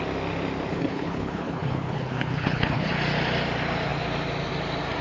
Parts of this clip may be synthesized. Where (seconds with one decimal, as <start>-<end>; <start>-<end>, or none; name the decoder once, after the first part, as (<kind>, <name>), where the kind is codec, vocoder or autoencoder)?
0.7-2.9 (codec, HILCodec)